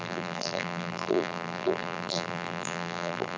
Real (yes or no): no